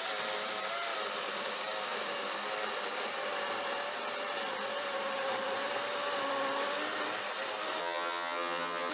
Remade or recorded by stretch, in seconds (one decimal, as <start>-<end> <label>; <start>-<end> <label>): 0.0-7.8 recorded; 7.8-8.9 remade